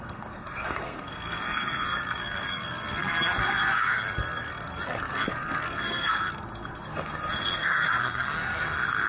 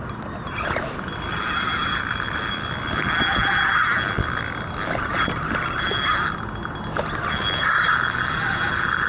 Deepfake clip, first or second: first